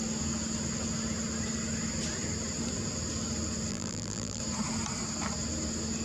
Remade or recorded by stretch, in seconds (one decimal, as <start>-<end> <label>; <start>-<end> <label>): 0.0-3.7 recorded; 3.7-4.4 remade; 4.4-6.0 recorded